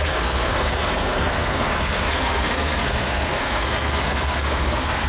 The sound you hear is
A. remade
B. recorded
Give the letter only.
A